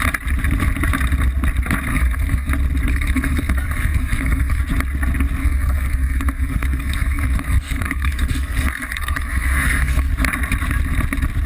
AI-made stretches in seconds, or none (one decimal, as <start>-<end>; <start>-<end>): 1.9-2.5; 2.9-4.6; 5.4-10.1